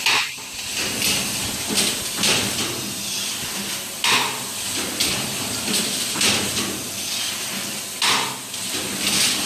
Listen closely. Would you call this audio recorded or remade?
recorded